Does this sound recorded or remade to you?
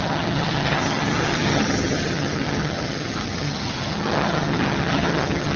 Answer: remade